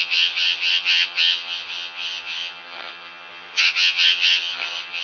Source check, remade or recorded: remade